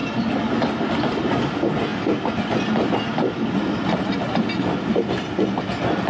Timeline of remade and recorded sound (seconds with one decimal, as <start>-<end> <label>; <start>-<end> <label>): 0.0-6.1 recorded